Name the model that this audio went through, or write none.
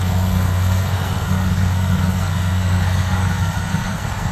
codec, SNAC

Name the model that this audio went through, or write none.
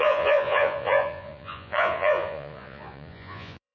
vocoder, Vocos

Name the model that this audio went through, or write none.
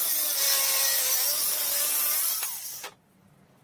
none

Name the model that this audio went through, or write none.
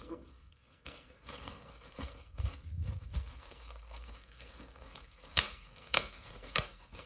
codec, SNAC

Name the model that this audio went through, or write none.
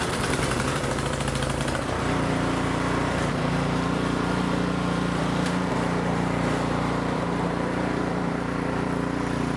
vocoder, BigVGAN v2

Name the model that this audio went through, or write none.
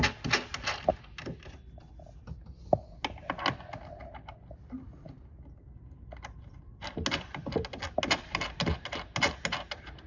none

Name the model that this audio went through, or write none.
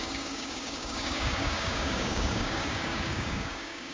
codec, DAC